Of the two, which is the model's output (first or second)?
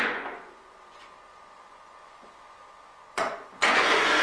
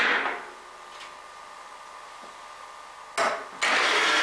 first